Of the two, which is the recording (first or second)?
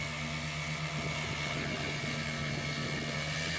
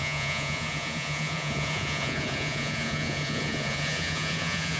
first